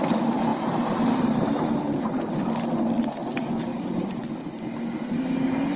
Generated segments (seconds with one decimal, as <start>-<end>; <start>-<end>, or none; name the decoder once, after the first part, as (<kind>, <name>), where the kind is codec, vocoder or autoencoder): none